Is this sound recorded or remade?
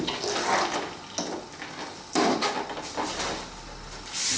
recorded